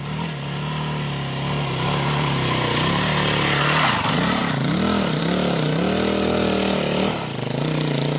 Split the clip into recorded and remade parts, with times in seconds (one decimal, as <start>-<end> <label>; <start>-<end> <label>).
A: 0.0-8.2 recorded